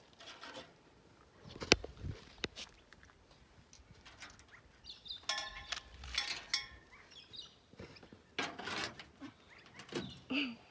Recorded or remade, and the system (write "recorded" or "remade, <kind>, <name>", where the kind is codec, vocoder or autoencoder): recorded